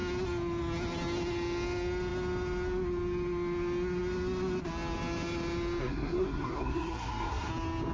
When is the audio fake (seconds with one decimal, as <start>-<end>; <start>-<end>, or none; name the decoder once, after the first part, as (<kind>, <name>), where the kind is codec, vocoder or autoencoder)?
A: 5.8-7.5 (codec, SNAC)